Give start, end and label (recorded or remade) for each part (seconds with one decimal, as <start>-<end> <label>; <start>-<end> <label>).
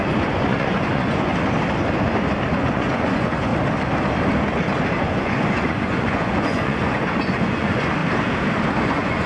0.0-1.3 remade; 1.3-2.5 recorded; 2.5-3.5 remade; 3.5-5.0 recorded; 5.0-8.0 remade; 8.0-8.8 recorded; 8.8-9.3 remade